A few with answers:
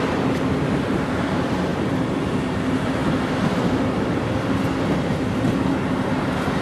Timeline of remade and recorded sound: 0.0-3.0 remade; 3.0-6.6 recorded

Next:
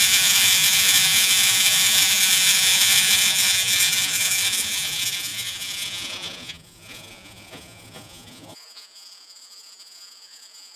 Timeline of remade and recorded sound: 0.0-10.8 remade

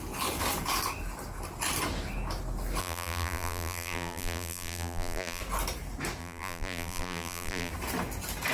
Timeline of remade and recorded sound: 0.0-2.8 recorded; 2.8-5.4 remade; 5.4-6.2 recorded; 6.2-7.7 remade; 7.7-8.5 recorded

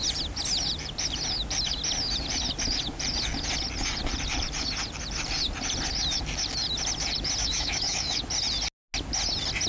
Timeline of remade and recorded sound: 0.0-7.4 recorded; 7.4-8.3 remade; 8.3-9.7 recorded

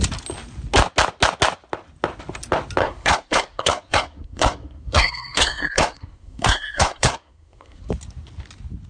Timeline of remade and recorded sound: 0.0-2.8 recorded; 2.8-7.9 remade; 7.9-8.9 recorded